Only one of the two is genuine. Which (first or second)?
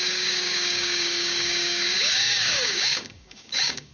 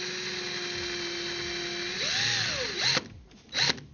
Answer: second